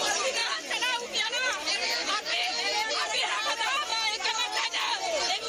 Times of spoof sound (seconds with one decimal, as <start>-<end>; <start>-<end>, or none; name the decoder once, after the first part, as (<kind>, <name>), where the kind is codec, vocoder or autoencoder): none